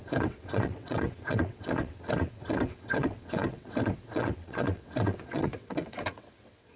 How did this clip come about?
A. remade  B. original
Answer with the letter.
A